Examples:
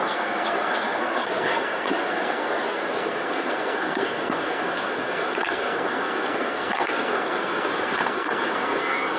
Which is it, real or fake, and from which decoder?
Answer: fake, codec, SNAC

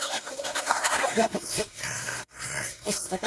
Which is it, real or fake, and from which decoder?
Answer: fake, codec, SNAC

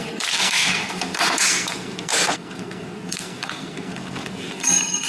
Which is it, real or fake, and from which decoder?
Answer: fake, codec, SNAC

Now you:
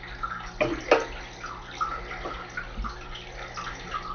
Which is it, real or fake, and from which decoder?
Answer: real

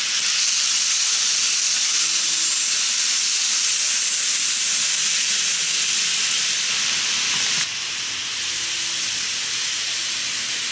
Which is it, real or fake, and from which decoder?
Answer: real